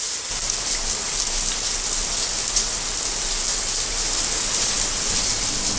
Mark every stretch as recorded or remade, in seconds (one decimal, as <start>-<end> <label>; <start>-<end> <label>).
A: 0.0-5.8 recorded